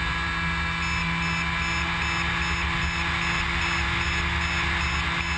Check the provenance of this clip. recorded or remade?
recorded